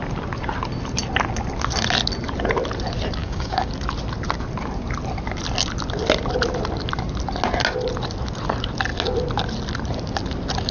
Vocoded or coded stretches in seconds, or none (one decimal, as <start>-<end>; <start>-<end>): 3.2-3.7